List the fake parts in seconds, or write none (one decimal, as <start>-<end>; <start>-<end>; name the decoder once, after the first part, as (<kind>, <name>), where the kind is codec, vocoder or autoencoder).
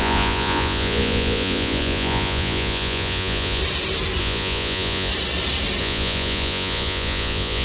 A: 0.0-3.6 (vocoder, Vocos); 4.2-5.1; 5.8-7.6